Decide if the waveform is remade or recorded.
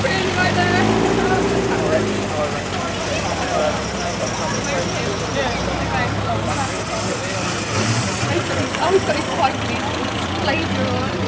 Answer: recorded